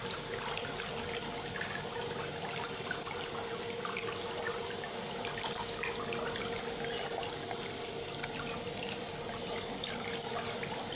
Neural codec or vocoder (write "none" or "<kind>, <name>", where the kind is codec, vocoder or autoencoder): none